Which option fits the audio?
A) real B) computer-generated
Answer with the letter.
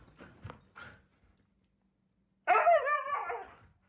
A